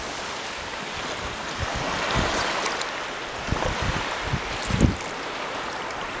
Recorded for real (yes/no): yes